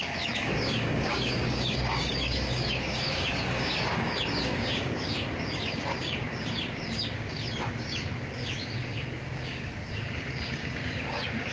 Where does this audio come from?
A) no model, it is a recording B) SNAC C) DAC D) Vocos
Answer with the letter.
C